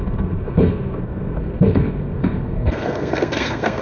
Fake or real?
fake